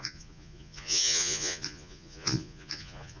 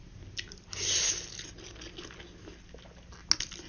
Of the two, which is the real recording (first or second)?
second